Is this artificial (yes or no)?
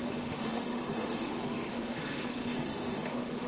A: yes